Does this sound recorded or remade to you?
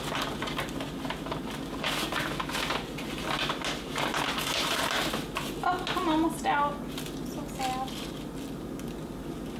recorded